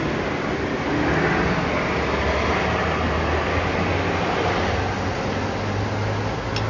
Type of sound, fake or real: real